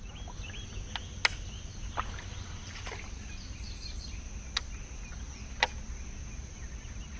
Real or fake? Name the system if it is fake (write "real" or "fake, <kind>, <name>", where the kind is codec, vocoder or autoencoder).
real